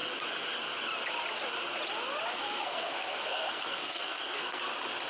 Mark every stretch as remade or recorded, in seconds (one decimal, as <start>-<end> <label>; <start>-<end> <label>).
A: 0.0-2.3 recorded; 2.3-4.6 remade; 4.6-5.1 recorded